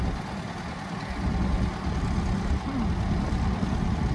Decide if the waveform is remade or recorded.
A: recorded